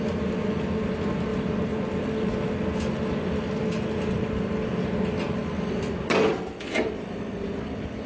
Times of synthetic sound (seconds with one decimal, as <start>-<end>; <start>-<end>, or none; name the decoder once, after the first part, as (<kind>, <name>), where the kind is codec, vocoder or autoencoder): none